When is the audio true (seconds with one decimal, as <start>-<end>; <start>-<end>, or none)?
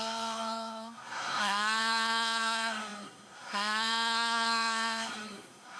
none